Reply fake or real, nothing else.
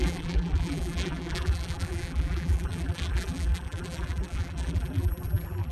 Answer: fake